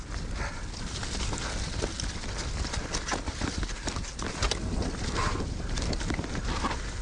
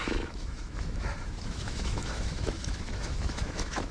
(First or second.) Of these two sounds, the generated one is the second